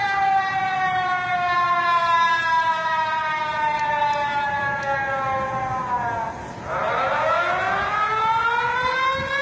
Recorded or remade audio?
recorded